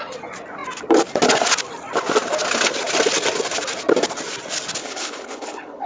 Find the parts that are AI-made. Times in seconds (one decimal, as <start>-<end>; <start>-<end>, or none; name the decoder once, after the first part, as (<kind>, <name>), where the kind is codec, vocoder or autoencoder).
4.8-5.9 (codec, HILCodec)